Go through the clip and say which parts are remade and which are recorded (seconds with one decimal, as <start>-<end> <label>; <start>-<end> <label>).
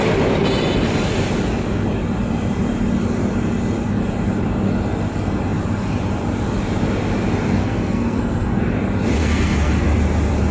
0.0-7.6 recorded; 7.6-8.6 remade; 8.6-9.2 recorded; 9.2-9.7 remade; 9.7-10.5 recorded